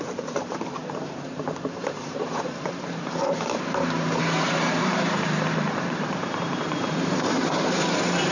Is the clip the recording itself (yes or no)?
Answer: no